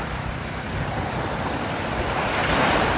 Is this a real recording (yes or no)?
no